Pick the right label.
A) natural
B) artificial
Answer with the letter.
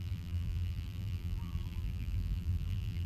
B